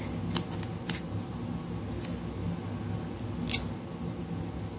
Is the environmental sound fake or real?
real